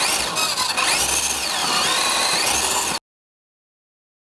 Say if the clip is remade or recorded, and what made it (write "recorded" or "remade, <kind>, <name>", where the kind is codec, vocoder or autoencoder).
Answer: recorded